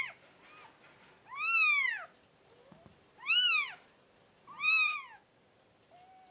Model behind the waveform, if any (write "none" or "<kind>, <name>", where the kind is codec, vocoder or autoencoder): none